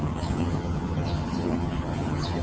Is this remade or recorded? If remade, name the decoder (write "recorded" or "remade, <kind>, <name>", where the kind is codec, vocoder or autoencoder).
remade, vocoder, HiFi-GAN